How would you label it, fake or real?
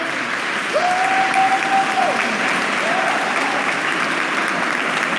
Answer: real